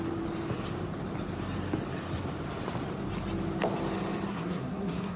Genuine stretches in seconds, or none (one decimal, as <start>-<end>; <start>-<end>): 0.0-4.3